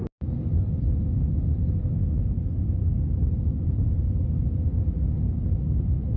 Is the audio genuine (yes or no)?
yes